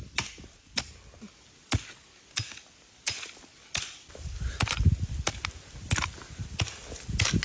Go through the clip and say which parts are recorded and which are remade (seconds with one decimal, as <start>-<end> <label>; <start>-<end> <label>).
0.0-7.4 recorded